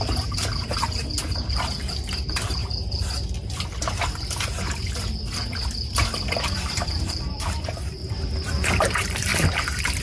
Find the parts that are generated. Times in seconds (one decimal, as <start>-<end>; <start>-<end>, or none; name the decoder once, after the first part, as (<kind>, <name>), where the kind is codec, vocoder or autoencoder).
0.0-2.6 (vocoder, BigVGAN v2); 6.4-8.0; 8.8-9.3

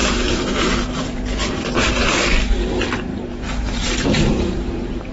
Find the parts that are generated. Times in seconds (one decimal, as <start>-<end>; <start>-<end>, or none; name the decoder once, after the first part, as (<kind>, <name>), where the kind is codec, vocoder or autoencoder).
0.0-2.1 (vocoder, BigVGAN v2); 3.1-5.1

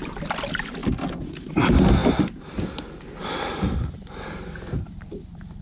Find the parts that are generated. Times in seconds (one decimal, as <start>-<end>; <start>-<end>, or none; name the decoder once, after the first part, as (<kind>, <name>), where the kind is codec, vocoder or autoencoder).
0.8-1.5 (vocoder, BigVGAN v2)